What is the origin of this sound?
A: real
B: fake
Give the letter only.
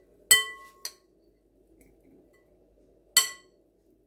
A